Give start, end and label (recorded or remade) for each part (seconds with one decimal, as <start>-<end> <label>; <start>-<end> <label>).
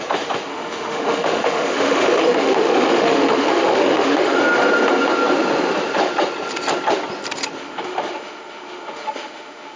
0.0-0.5 recorded; 0.5-4.4 remade; 4.4-7.6 recorded; 7.6-9.8 remade